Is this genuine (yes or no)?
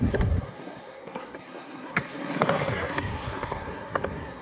no